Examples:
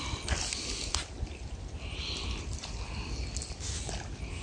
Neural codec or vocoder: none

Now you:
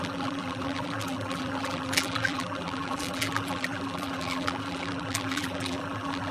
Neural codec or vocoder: vocoder, BigVGAN v2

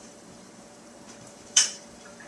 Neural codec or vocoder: vocoder, BigVGAN v2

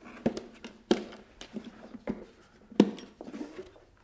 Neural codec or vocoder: none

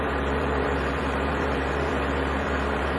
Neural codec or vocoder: vocoder, BigVGAN v2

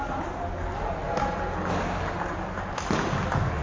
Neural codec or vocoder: none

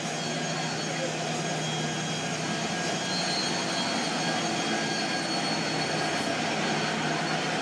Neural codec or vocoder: none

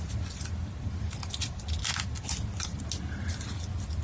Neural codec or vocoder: none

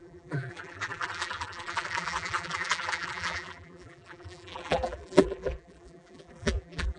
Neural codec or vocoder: vocoder, BigVGAN v2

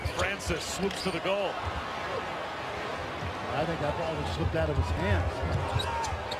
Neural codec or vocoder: none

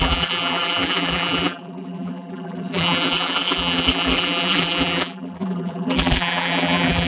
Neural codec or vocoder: vocoder, BigVGAN v2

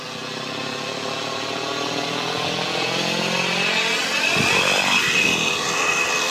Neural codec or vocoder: none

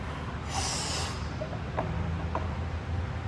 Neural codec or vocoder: none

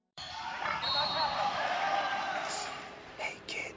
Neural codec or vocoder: vocoder, BigVGAN v2